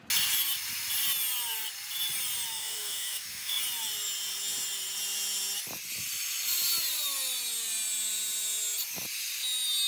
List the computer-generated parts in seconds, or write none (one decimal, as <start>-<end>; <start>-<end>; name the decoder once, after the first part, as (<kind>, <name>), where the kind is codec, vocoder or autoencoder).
2.5-3.6 (autoencoder, DAC-VAE)